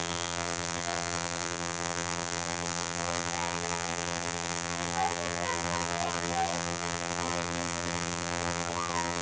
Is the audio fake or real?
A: fake